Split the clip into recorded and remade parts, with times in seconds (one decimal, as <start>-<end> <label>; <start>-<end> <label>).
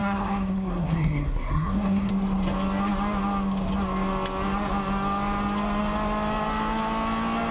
0.0-2.1 remade; 2.1-7.5 recorded